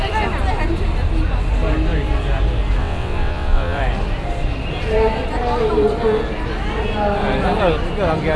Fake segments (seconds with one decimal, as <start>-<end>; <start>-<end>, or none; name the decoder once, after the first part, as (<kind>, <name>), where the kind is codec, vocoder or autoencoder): 2.8-3.8 (vocoder, WaveNeXt)